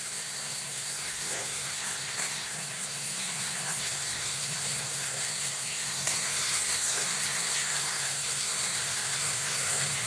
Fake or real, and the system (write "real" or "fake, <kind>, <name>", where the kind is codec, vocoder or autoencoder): fake, codec, SNAC